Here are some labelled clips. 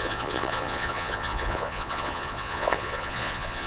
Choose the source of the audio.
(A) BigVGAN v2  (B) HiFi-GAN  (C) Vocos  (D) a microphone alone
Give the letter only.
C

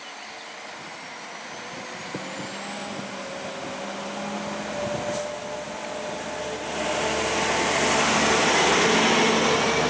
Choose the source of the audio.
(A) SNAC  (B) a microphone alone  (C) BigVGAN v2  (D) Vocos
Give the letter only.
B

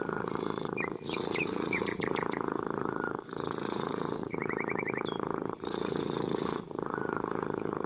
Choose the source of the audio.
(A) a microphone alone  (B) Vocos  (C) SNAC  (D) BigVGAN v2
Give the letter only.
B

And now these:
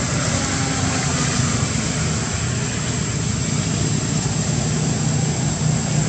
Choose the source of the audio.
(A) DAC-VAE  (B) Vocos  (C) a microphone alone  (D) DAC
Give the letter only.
C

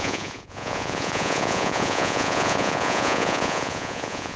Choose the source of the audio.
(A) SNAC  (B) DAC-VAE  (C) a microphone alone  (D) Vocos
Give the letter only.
D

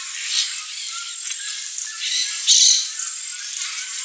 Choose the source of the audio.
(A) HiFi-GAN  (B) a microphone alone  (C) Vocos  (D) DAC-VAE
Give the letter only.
B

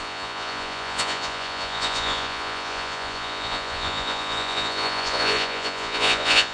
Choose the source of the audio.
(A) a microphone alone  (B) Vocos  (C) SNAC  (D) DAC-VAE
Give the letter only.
B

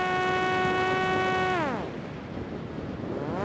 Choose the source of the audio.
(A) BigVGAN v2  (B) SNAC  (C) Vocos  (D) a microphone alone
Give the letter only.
D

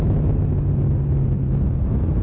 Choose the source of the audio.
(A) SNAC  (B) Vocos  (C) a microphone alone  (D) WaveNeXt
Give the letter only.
C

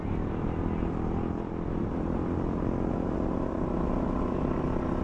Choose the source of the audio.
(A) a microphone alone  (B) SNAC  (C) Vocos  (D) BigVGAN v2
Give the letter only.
A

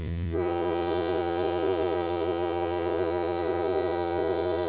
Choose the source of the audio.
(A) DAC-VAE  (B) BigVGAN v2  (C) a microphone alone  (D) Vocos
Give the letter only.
D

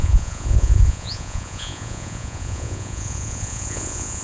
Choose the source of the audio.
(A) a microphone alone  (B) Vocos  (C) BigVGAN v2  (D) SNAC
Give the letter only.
B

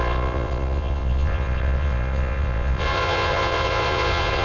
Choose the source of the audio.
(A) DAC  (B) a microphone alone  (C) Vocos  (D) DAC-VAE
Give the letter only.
C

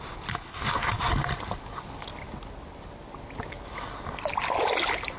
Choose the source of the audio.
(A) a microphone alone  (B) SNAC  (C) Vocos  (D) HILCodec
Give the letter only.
A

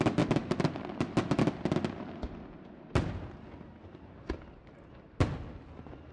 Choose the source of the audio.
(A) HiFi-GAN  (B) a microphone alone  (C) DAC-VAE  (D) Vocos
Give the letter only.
B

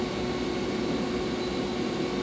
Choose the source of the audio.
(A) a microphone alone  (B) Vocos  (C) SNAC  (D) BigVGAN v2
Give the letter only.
A